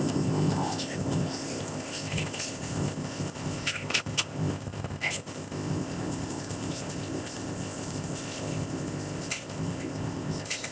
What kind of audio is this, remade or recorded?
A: remade